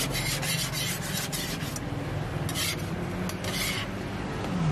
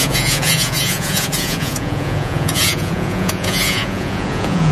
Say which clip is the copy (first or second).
second